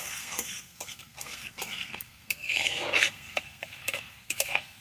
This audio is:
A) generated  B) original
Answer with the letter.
A